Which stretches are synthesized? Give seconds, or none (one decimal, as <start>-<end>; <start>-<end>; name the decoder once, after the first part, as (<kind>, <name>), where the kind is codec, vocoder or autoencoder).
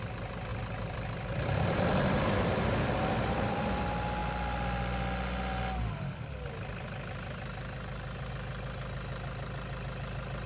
0.5-3.8 (vocoder, BigVGAN v2)